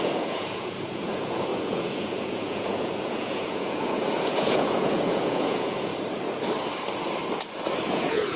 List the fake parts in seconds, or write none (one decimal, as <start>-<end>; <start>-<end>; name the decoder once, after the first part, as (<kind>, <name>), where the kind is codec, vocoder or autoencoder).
0.0-5.9 (vocoder, Vocos); 7.9-8.4